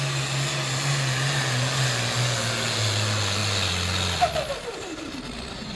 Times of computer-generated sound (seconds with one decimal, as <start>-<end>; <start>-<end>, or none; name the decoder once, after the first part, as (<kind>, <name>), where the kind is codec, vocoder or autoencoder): none

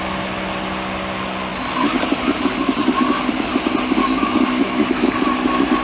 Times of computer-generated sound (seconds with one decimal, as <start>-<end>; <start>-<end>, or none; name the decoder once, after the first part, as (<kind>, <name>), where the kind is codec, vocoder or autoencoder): 4.0-5.1 (autoencoder, DAC-VAE)

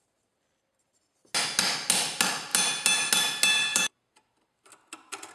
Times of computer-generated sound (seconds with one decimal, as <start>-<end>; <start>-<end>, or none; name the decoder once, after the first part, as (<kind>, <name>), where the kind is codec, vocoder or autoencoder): 3.7-4.7 (vocoder, BigVGAN v2)

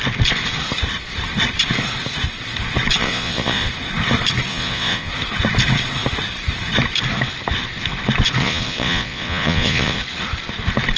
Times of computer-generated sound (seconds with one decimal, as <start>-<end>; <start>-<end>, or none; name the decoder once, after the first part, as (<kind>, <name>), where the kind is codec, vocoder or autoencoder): 3.0-3.7 (vocoder, Vocos); 4.5-5.1; 8.4-10.0

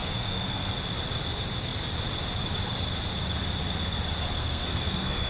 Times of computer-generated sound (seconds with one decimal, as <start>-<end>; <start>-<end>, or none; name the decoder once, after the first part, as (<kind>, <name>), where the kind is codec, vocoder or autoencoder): 0.0-0.7 (codec, SNAC); 4.4-5.3